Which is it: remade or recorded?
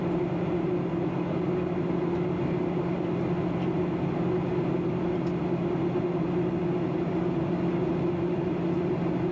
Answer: recorded